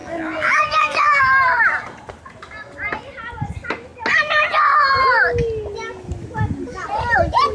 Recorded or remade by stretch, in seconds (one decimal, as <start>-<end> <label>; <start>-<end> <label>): 0.0-1.2 remade; 1.2-7.5 recorded

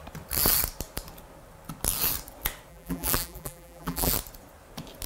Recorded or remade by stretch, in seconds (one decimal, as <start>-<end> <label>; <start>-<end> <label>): 0.0-2.7 recorded; 2.7-4.1 remade; 4.1-5.1 recorded

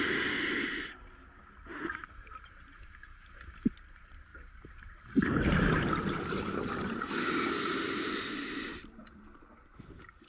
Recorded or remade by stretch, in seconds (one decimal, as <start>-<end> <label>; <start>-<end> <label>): 0.0-1.7 recorded; 1.7-2.8 remade; 2.8-4.3 recorded; 4.3-9.4 remade; 9.4-10.3 recorded

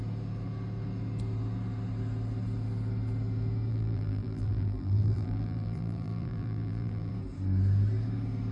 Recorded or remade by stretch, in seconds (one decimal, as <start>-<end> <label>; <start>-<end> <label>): 0.0-3.7 recorded; 3.7-7.1 remade; 7.1-8.5 recorded

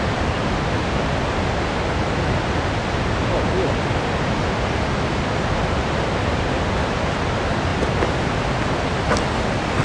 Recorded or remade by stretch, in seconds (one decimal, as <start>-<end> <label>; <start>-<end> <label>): 0.0-9.8 recorded

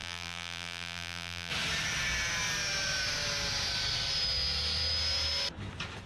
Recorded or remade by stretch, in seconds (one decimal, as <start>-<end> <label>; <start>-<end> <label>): 0.0-1.5 remade; 1.5-6.1 recorded

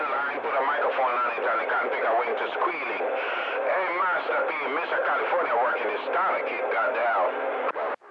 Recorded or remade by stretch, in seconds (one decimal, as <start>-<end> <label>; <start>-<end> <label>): 0.0-7.0 recorded; 7.0-8.1 remade